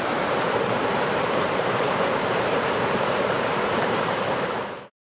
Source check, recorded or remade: remade